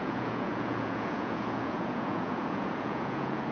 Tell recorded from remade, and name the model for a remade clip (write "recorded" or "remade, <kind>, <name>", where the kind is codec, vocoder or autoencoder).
remade, vocoder, Vocos